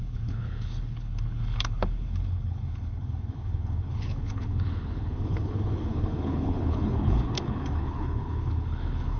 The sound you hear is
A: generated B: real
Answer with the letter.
A